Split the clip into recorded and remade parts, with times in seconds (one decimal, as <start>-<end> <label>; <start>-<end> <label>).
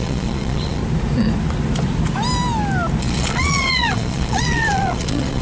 0.0-0.8 remade; 0.8-3.0 recorded; 3.0-5.4 remade